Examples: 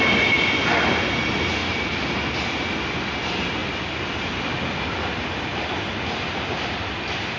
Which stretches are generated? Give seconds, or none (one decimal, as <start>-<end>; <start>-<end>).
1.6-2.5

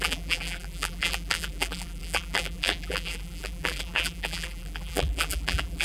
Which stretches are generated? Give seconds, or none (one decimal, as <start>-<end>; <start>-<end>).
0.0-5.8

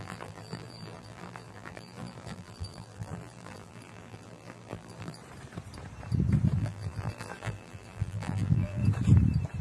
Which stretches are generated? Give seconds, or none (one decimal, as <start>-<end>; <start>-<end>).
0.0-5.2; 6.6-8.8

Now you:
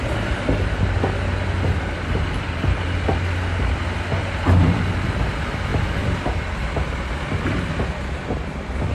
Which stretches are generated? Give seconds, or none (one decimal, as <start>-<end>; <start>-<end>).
5.7-6.3

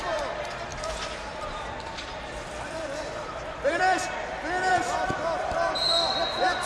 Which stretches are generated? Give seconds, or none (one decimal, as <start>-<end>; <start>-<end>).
0.0-6.7

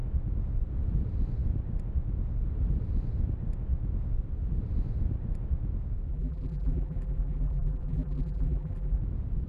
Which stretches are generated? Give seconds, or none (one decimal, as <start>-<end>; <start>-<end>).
6.1-9.0

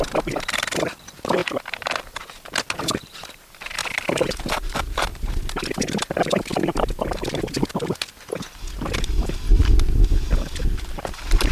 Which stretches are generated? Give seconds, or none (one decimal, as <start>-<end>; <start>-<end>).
1.4-2.2; 3.8-7.4

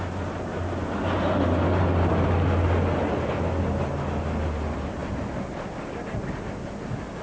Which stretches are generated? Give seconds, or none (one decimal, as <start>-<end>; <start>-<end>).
none